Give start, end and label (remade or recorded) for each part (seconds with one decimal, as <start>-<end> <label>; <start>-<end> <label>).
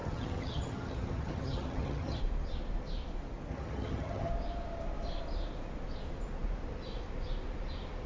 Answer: 0.0-2.2 remade; 2.2-3.5 recorded; 3.5-4.3 remade; 4.3-8.1 recorded